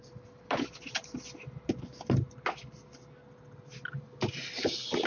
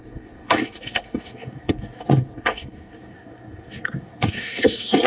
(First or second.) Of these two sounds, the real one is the first